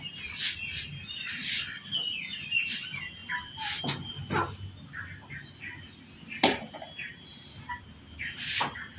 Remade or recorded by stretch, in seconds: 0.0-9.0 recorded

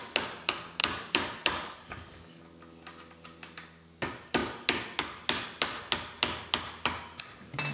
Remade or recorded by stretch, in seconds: 0.0-0.8 recorded; 0.8-2.4 remade; 2.4-7.7 recorded

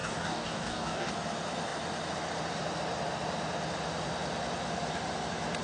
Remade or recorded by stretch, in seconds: 0.0-1.1 remade; 1.1-5.6 recorded

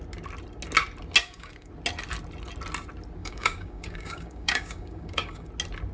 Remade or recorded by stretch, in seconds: 0.0-1.2 recorded; 1.2-1.7 remade; 1.7-3.2 recorded; 3.2-5.5 remade; 5.5-5.9 recorded

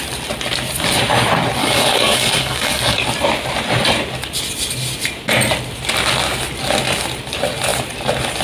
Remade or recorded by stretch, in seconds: 0.0-1.6 recorded; 1.6-3.0 remade; 3.0-8.4 recorded